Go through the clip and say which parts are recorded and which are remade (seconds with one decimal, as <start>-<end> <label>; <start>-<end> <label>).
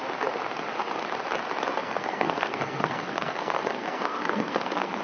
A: 0.0-1.8 recorded; 1.8-5.0 remade